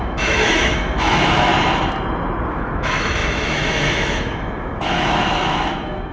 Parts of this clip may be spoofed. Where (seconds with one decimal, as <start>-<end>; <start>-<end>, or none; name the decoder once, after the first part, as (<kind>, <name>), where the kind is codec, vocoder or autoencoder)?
0.0-1.5 (autoencoder, DAC-VAE); 2.5-6.1